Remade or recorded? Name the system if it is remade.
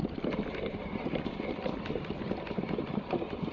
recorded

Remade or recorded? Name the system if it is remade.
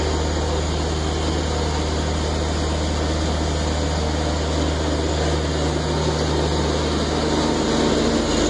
recorded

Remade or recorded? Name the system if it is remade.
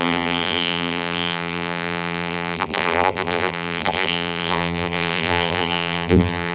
remade, vocoder, BigVGAN v2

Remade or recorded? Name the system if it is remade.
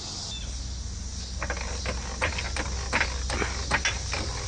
recorded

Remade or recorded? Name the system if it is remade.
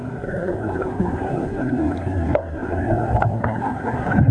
remade, codec, SNAC